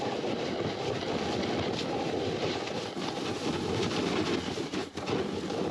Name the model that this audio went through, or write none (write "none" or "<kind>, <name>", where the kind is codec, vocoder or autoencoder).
none